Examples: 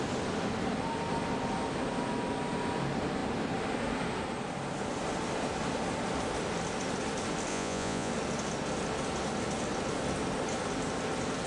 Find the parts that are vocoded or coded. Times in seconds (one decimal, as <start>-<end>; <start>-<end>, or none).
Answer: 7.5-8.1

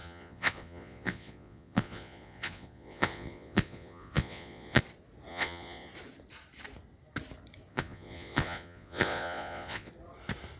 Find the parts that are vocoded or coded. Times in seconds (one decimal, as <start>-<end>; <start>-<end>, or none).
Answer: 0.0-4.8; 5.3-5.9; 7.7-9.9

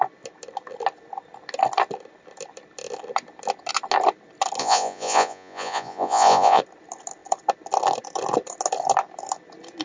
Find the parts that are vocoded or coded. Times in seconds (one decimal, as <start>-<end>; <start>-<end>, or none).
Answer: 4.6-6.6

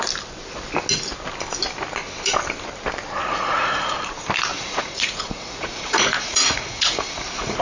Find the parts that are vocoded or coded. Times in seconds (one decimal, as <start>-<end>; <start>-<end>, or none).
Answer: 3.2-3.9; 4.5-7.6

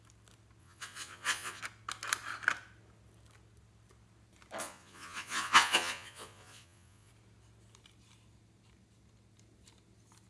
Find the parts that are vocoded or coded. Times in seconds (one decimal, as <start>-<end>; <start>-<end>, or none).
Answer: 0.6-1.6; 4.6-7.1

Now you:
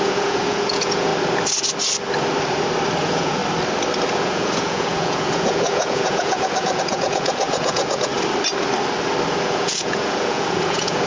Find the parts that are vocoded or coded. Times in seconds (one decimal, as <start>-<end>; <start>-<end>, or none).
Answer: 0.0-1.1; 3.0-3.4; 4.2-8.1; 9.4-11.1

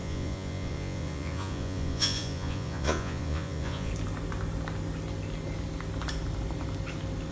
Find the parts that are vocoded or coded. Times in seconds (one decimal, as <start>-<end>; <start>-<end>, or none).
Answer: 0.0-3.9

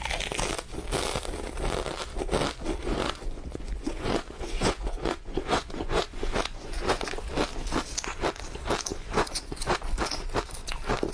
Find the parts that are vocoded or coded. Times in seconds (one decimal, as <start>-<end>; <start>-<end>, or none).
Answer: 2.8-7.3; 8.9-9.8